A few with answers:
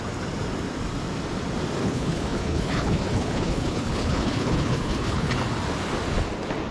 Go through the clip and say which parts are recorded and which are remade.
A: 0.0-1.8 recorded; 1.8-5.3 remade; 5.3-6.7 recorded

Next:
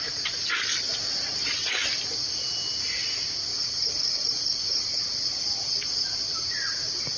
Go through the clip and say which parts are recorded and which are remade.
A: 0.0-3.5 recorded; 3.5-5.0 remade; 5.0-7.2 recorded